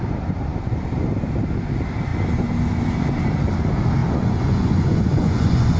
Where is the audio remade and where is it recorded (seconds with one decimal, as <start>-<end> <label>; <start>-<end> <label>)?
0.0-4.0 recorded; 4.0-5.8 remade